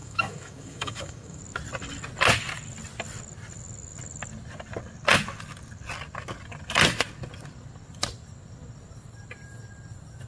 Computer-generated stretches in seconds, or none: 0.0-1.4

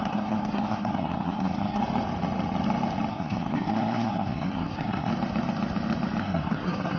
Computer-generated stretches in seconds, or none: 0.0-1.8; 3.1-5.1; 6.2-7.0

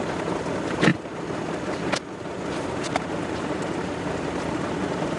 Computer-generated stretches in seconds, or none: none

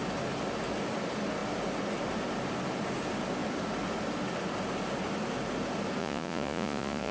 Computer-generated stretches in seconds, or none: 6.0-7.1

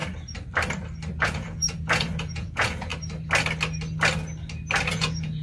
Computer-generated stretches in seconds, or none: 1.2-2.9; 4.9-5.4